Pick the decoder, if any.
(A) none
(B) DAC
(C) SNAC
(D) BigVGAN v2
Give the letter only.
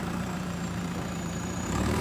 D